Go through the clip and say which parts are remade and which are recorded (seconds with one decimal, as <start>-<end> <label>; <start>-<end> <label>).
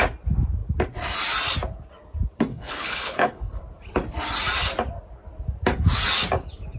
0.0-2.5 recorded; 2.5-3.6 remade; 3.6-6.8 recorded